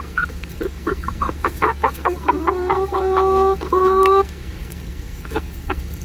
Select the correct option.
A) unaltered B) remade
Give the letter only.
B